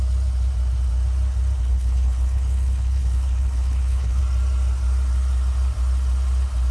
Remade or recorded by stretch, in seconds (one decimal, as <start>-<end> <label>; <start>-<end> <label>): 0.0-1.6 recorded; 1.6-4.2 remade; 4.2-6.7 recorded